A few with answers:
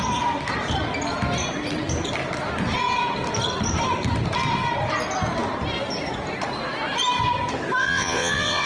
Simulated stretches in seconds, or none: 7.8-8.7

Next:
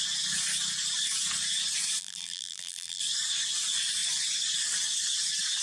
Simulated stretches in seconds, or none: 2.0-3.0